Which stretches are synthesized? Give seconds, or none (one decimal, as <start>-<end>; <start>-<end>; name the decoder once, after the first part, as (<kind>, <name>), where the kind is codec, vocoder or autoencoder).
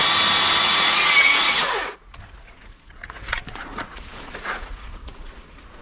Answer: 0.6-5.8 (vocoder, Vocos)